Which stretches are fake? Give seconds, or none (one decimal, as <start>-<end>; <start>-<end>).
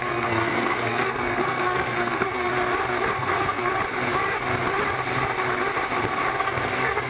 0.0-2.5; 3.2-3.7; 6.4-7.1